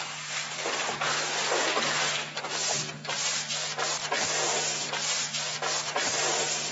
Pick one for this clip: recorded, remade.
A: recorded